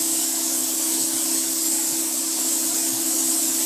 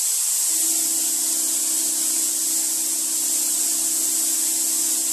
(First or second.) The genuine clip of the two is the second